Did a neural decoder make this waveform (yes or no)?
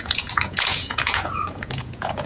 yes